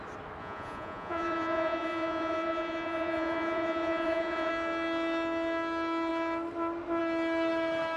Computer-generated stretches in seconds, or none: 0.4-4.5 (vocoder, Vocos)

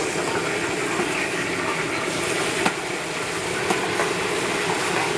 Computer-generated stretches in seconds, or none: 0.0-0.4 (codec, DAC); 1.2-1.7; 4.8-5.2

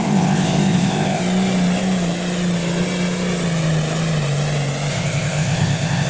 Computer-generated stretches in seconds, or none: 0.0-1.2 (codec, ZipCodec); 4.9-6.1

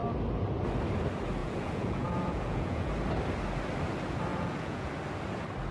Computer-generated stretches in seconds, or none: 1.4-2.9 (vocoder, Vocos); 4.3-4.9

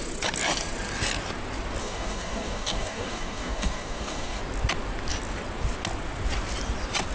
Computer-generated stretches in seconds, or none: 1.8-4.4 (codec, DAC)

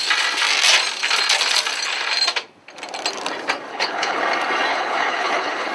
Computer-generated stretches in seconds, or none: 3.7-4.2 (codec, HILCodec); 4.7-5.7

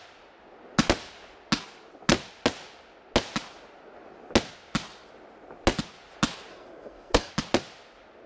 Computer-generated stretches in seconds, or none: 6.5-7.3 (codec, SNAC)

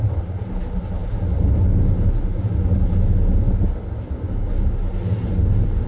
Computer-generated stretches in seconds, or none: none